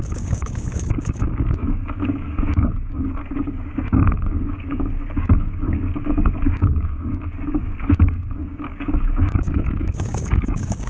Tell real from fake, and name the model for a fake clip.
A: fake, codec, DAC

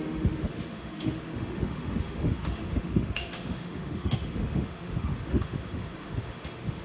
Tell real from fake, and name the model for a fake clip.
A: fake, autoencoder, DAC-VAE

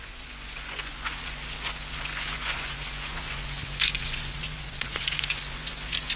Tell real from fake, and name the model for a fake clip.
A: fake, vocoder, Vocos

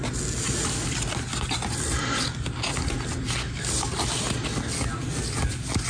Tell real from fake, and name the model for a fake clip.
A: real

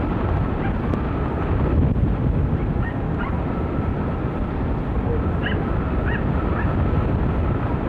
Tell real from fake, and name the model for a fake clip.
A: real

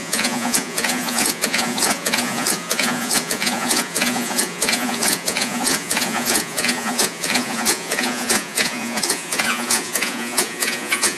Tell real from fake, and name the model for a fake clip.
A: fake, vocoder, Vocos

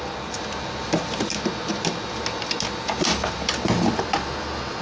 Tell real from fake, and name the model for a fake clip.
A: real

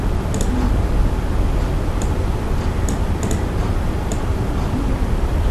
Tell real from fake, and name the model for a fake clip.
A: real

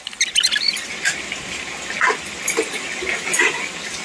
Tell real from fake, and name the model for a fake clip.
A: real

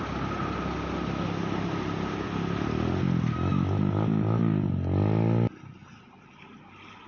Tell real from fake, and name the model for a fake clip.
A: real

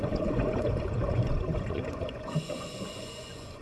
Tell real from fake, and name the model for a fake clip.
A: fake, vocoder, Vocos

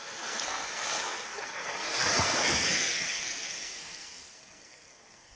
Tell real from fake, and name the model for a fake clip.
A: fake, codec, SNAC